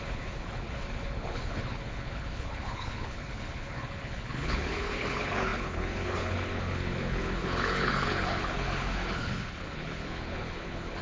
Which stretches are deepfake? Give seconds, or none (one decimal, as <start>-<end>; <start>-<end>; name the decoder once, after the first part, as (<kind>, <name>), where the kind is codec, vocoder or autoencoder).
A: 0.0-11.0 (codec, HILCodec)